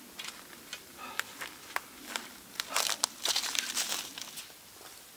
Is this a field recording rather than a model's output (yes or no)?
yes